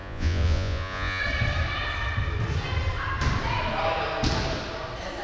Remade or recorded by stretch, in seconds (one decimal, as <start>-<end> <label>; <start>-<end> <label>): 0.0-1.2 remade; 1.2-5.2 recorded